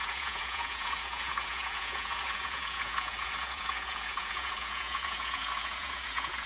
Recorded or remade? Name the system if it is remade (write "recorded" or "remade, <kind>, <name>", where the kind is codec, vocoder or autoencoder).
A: remade, vocoder, Vocos